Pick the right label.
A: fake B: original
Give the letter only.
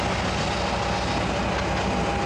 B